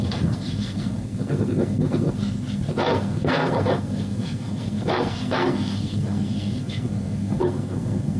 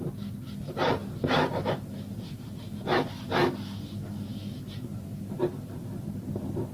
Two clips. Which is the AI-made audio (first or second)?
first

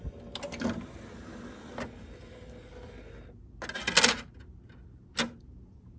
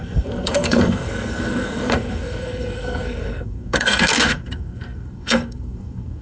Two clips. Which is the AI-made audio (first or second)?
second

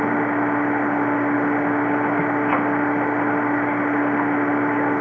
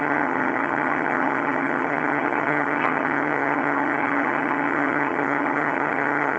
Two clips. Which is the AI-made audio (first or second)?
second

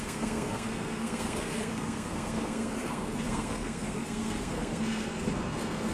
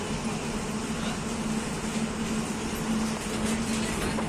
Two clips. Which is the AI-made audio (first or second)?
first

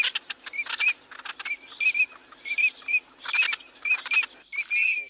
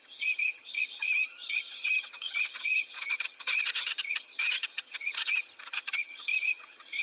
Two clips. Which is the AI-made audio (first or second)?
second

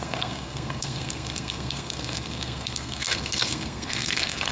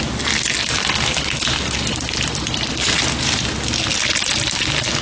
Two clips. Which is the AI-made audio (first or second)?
first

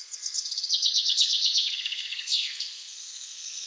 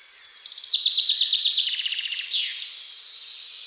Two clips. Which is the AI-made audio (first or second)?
first